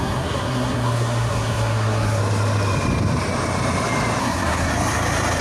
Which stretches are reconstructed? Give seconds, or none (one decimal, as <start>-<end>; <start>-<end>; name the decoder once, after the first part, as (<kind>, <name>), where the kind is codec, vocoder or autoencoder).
0.0-2.2 (codec, SNAC); 4.2-4.7